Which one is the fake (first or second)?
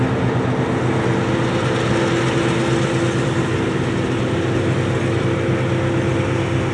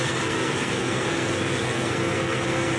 second